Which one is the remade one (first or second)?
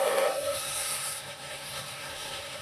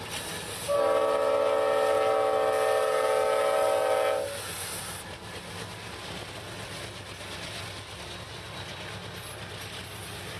first